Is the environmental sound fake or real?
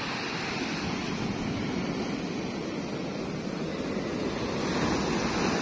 real